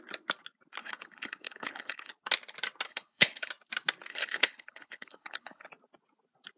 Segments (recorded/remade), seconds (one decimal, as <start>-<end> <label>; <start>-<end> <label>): 0.0-0.8 recorded; 0.8-2.1 remade; 2.1-2.9 recorded; 2.9-3.5 remade; 3.5-4.1 recorded; 4.1-5.7 remade; 5.7-6.6 recorded

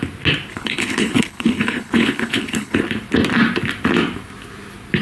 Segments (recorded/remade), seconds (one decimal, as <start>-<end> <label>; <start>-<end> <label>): 0.0-0.5 recorded; 0.5-2.8 remade; 2.8-5.0 recorded

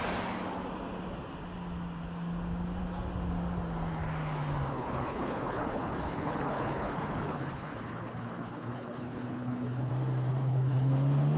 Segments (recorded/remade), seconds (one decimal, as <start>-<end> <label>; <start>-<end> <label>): 0.0-4.7 recorded; 4.7-9.9 remade; 9.9-10.3 recorded; 10.3-10.9 remade; 10.9-11.4 recorded

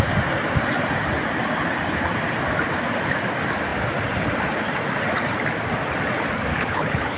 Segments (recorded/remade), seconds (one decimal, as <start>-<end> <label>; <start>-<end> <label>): 0.0-6.5 recorded; 6.5-7.2 remade

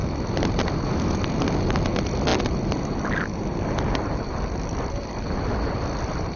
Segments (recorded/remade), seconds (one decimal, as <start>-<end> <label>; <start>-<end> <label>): 0.0-6.4 recorded

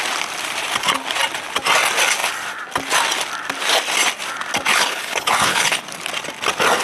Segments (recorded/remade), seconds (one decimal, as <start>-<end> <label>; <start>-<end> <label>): 0.0-4.7 recorded; 4.7-5.8 remade; 5.8-6.8 recorded

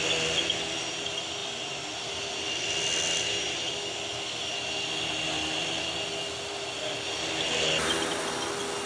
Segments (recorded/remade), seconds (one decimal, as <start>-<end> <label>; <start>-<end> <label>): 0.0-8.9 recorded